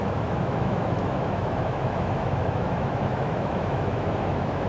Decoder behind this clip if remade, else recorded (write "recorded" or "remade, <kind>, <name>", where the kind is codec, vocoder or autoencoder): remade, autoencoder, DAC-VAE